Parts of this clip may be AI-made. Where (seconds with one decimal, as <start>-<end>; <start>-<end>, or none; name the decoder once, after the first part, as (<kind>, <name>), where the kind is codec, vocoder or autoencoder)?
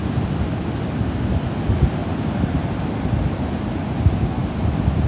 none